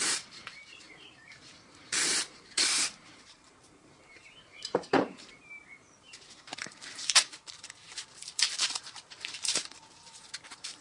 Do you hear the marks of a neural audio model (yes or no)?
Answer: yes